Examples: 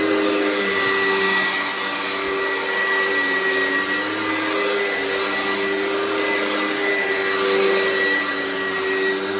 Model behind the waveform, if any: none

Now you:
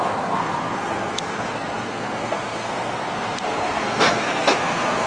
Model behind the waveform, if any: codec, SNAC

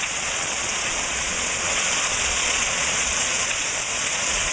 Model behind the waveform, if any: vocoder, Vocos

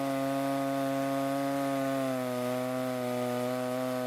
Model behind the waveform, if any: none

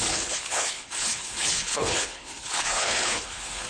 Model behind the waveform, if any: codec, HILCodec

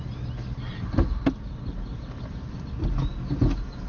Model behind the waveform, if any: none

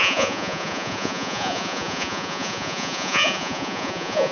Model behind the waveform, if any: vocoder, Vocos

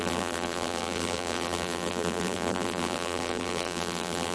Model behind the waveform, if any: vocoder, BigVGAN v2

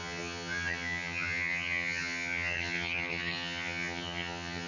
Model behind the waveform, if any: vocoder, HiFi-GAN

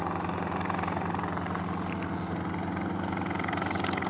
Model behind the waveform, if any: none